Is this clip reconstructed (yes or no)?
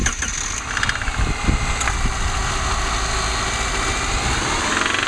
no